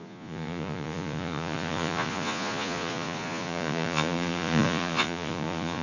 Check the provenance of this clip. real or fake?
fake